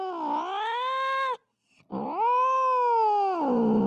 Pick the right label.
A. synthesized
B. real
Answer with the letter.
B